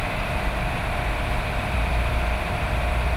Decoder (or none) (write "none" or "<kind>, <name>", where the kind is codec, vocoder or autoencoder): vocoder, BigVGAN v2